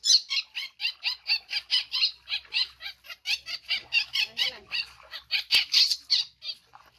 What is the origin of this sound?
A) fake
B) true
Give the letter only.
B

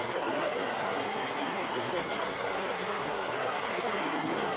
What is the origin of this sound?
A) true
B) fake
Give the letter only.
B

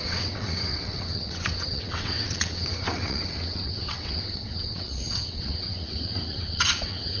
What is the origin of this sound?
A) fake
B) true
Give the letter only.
A